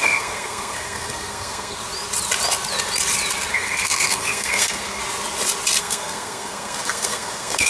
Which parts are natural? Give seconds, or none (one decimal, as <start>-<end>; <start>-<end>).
1.8-3.5; 5.0-5.8